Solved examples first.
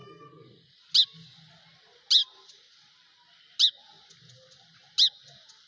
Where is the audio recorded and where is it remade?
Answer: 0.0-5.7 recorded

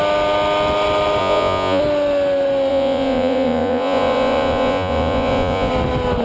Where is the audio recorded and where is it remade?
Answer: 0.0-1.2 recorded; 1.2-1.8 remade; 1.8-2.7 recorded; 2.7-5.7 remade; 5.7-6.2 recorded